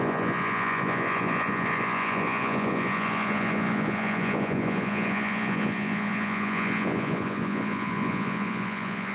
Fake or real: fake